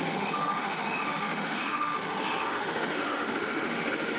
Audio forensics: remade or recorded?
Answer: remade